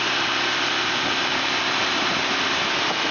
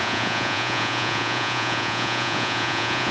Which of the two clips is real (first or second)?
first